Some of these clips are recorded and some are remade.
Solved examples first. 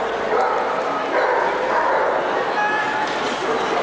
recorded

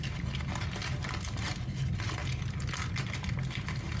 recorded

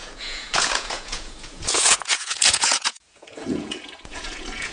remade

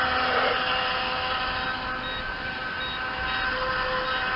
recorded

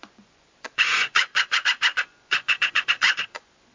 remade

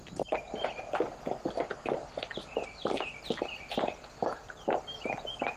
recorded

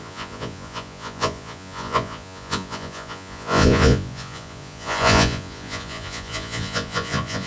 remade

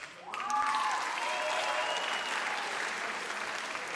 recorded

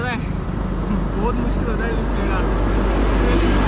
recorded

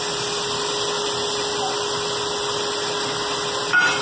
recorded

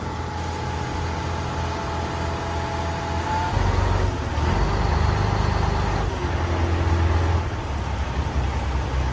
recorded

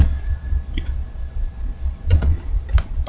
remade